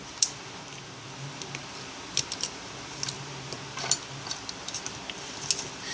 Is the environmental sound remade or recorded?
recorded